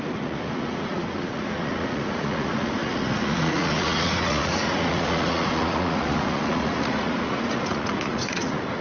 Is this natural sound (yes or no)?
no